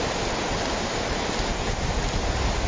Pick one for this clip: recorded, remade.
recorded